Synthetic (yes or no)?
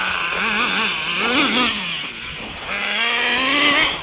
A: no